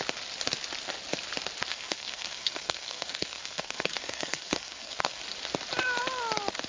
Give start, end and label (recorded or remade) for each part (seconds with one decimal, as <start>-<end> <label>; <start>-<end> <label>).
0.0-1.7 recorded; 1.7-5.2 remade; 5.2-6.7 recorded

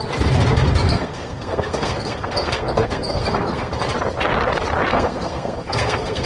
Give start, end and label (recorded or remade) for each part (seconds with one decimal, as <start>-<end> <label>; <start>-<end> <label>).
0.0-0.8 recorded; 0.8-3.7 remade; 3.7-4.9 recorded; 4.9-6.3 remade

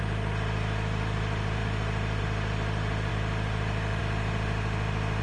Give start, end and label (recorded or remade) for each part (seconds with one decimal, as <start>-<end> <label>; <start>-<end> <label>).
0.0-5.2 recorded

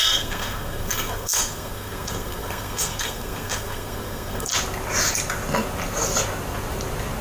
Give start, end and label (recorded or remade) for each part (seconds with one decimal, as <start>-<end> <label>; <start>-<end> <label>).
0.0-4.5 remade; 4.5-7.2 recorded

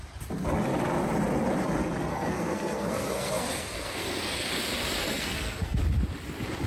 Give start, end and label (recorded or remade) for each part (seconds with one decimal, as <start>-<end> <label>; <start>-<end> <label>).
0.0-2.1 recorded; 2.1-4.6 remade; 4.6-5.0 recorded; 5.0-5.8 remade; 5.8-6.7 recorded